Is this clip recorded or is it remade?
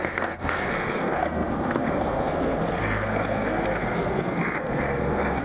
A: remade